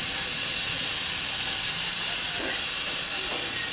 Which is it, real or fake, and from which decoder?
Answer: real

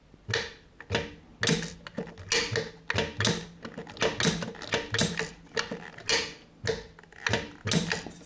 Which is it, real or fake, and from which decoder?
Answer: real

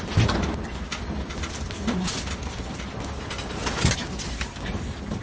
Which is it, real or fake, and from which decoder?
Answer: real